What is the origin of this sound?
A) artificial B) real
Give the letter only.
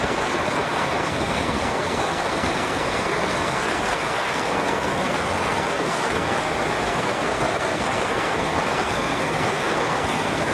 A